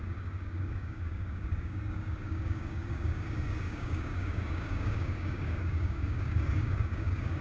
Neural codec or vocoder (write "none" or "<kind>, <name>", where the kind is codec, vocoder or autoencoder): codec, DAC